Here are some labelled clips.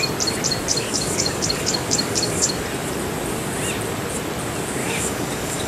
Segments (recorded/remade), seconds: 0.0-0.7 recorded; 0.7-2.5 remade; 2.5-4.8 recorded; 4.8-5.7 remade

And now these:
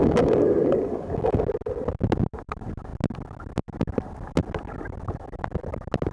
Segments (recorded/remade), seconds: 0.0-1.4 remade; 1.4-6.1 recorded

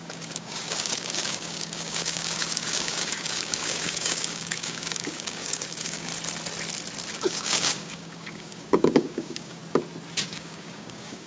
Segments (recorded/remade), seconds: 0.0-6.1 remade; 6.1-7.1 recorded; 7.1-9.6 remade; 9.6-10.2 recorded; 10.2-11.3 remade

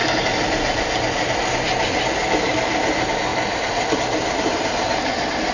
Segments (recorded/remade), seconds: 0.0-5.5 recorded

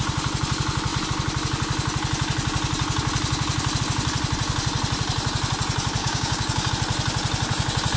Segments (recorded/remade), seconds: 0.0-6.0 recorded; 6.0-6.7 remade; 6.7-8.0 recorded

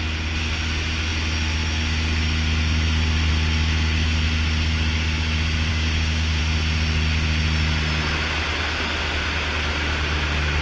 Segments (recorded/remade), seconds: 0.0-5.7 recorded; 5.7-6.4 remade; 6.4-10.6 recorded